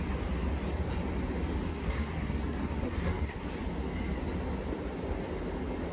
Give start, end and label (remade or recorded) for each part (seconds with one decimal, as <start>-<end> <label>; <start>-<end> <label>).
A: 0.0-1.7 recorded; 1.7-3.5 remade; 3.5-5.9 recorded